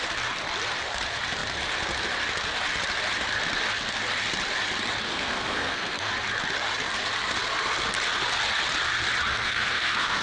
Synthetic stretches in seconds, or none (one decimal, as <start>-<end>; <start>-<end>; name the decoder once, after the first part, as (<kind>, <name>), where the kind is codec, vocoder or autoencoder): 5.1-6.1 (codec, SNAC); 9.3-10.2